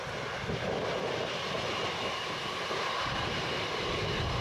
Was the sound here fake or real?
real